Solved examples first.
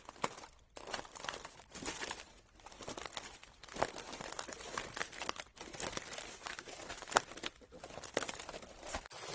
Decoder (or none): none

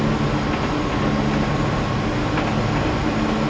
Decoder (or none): none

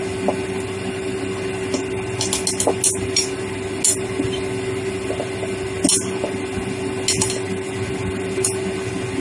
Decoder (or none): none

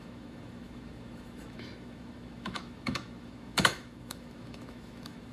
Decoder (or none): autoencoder, DAC-VAE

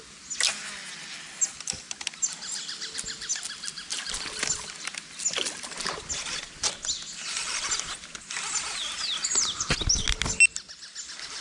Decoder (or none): none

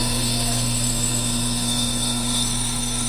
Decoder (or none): codec, SNAC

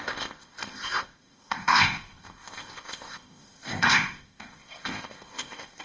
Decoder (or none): codec, ZipCodec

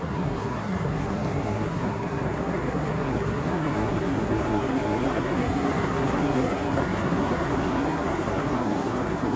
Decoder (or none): codec, SNAC